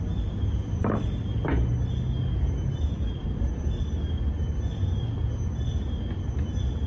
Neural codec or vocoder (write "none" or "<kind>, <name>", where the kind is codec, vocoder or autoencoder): none